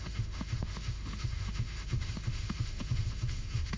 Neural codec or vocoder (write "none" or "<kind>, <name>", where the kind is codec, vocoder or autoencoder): autoencoder, DAC-VAE